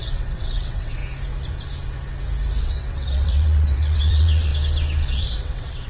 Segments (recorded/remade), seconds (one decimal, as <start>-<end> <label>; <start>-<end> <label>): 0.0-1.0 remade; 1.0-2.6 recorded; 2.6-4.5 remade; 4.5-5.2 recorded; 5.2-5.9 remade